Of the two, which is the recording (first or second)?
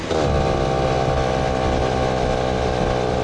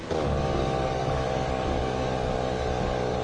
first